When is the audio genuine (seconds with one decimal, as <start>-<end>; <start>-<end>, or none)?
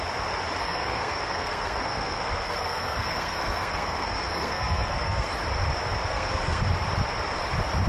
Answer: 0.0-0.6; 5.3-6.1; 6.6-7.9